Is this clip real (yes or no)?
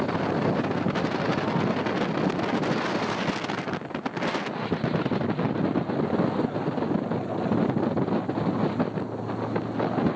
yes